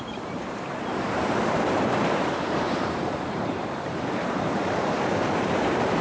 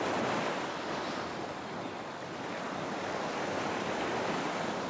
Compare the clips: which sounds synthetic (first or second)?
first